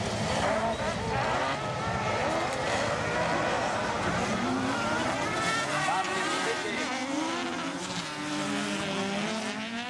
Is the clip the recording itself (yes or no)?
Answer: yes